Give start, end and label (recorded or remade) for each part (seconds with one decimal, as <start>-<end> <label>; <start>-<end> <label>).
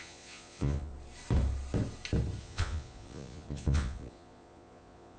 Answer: 0.0-0.9 remade; 0.9-2.4 recorded; 2.4-5.2 remade